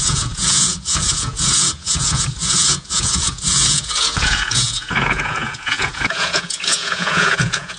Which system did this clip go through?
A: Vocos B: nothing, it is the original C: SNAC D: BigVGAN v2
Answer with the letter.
A